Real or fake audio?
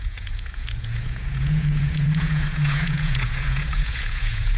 fake